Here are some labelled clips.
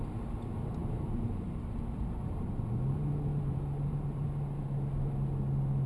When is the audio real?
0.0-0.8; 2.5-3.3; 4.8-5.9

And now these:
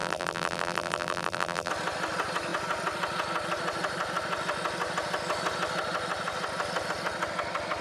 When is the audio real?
1.7-7.8

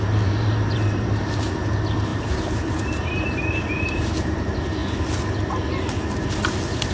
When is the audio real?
4.8-6.9